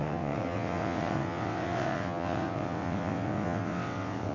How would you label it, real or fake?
fake